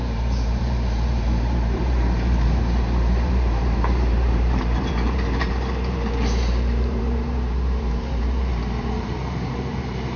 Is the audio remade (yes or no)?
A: yes